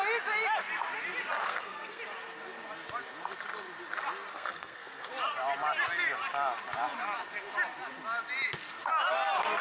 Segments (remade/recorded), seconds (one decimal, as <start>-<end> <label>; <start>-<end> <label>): 0.0-1.4 recorded; 1.4-2.0 remade; 2.0-4.3 recorded; 4.3-5.1 remade; 5.1-9.6 recorded